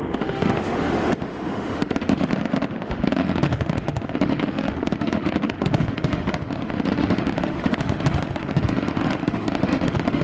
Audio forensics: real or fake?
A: fake